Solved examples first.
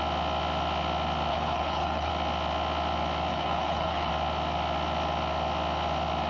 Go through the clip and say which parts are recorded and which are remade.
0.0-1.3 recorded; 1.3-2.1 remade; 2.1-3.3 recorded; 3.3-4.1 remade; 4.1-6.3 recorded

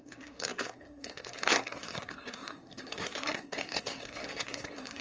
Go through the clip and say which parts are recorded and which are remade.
0.0-5.0 remade

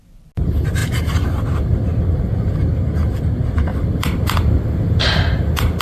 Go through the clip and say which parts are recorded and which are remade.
0.0-0.8 recorded; 0.8-2.2 remade; 2.2-3.7 recorded; 3.7-5.8 remade

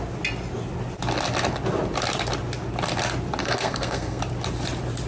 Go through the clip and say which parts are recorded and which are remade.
0.0-3.4 recorded; 3.4-4.2 remade; 4.2-5.1 recorded

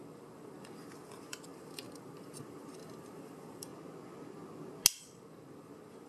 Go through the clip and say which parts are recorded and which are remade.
0.0-3.7 remade; 3.7-5.0 recorded; 5.0-6.1 remade

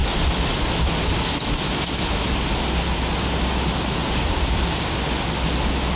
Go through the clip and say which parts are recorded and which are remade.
0.0-6.0 recorded

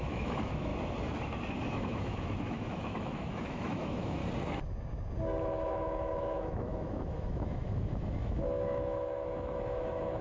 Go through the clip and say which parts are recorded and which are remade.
0.0-0.7 remade; 0.7-1.5 recorded; 1.5-4.2 remade; 4.2-5.4 recorded; 5.4-10.2 remade

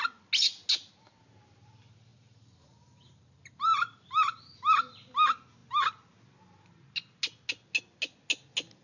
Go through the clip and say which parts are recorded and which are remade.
0.0-2.1 recorded; 2.1-4.4 remade; 4.4-8.8 recorded